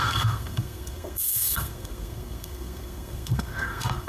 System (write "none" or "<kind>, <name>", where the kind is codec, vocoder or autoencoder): codec, SNAC